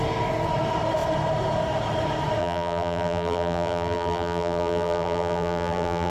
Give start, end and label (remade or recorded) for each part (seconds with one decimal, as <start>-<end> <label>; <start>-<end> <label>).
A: 0.0-2.4 recorded; 2.4-6.1 remade